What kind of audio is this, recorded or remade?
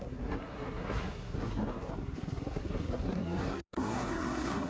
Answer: remade